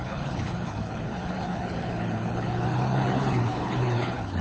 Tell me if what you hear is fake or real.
fake